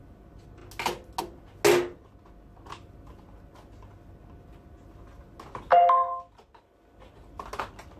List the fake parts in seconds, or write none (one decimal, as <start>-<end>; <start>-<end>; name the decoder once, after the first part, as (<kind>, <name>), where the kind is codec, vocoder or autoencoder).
none